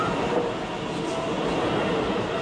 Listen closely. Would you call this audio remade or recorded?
recorded